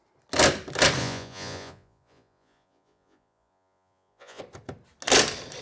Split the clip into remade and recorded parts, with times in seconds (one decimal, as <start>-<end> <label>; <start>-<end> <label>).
0.0-1.0 recorded; 1.0-4.4 remade; 4.4-5.6 recorded